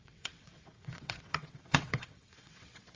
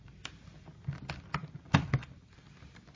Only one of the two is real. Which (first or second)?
second